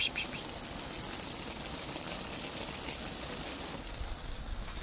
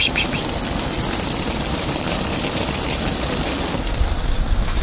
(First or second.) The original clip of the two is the first